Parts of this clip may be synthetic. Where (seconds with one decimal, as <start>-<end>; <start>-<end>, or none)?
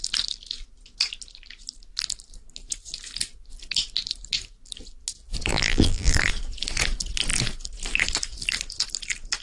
5.5-6.3